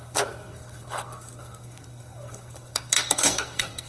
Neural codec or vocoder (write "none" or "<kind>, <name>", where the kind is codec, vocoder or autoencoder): codec, SNAC